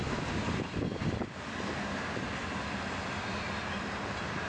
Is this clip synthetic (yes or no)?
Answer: no